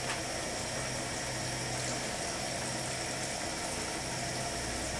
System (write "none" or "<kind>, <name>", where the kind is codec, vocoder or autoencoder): none